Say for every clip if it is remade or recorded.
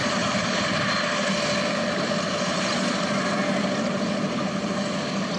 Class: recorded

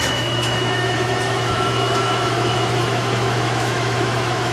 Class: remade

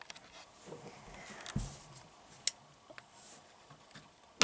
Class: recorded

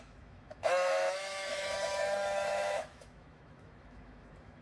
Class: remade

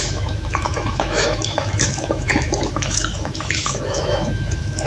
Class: remade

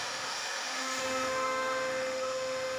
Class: remade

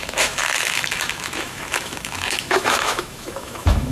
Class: remade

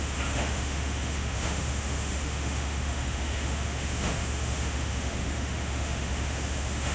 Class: remade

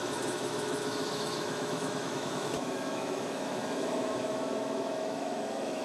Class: remade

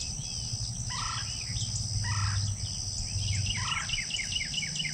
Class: recorded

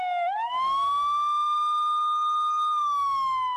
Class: remade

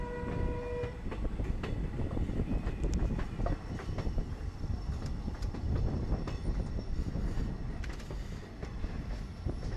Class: recorded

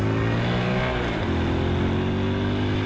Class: recorded